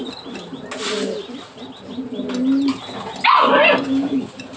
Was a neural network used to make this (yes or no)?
no